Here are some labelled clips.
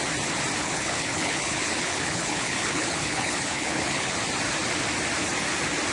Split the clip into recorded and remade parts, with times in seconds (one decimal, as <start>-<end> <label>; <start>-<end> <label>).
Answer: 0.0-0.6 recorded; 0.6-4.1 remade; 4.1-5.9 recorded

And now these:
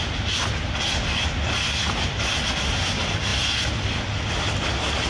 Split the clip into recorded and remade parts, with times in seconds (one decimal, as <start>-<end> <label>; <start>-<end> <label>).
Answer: 0.0-5.1 recorded

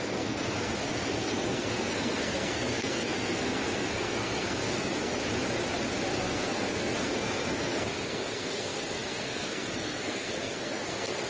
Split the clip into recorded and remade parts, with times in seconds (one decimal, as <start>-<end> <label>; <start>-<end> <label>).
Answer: 0.0-5.2 remade; 5.2-6.2 recorded; 6.2-11.3 remade